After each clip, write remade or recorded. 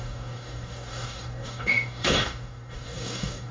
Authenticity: remade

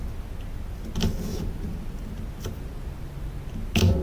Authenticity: recorded